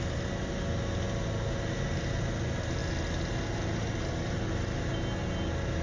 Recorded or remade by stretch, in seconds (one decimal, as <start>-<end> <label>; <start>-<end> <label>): 0.0-5.8 recorded